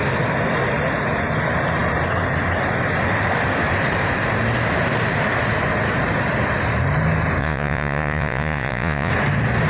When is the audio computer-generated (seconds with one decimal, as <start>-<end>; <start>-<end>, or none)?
7.4-9.1